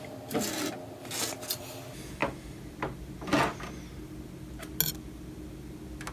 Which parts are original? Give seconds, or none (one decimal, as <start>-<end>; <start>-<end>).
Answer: 0.0-6.1